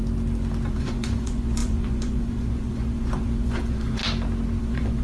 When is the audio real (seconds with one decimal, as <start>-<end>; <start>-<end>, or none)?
0.0-0.7; 4.0-4.6